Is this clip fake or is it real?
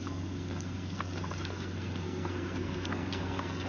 fake